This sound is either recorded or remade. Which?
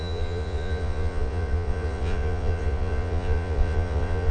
remade